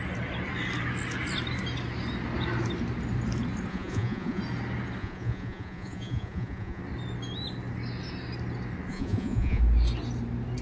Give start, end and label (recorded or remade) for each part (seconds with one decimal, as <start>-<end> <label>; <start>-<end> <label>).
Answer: 0.0-3.7 recorded; 3.7-4.4 remade; 4.4-5.0 recorded; 5.0-6.8 remade; 6.8-8.9 recorded; 8.9-9.6 remade; 9.6-10.6 recorded